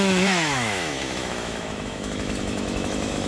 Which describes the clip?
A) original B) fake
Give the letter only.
B